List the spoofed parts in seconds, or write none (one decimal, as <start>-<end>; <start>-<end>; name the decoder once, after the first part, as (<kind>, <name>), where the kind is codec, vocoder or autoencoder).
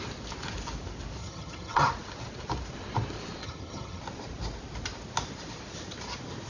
1.2-1.9 (vocoder, HiFi-GAN); 3.4-4.0